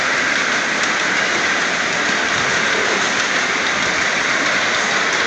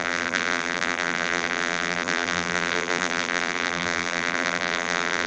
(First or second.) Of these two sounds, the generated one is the second